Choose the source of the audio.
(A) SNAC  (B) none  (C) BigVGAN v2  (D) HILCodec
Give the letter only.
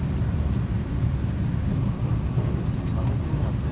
B